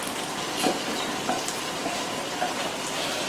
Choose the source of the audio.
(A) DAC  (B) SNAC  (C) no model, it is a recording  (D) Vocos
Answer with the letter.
C